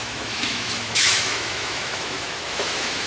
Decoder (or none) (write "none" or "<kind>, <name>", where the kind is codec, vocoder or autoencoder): autoencoder, DAC-VAE